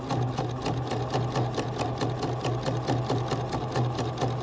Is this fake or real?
real